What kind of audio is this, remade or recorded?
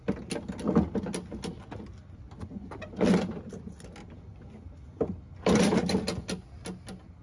recorded